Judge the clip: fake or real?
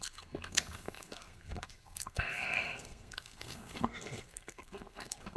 fake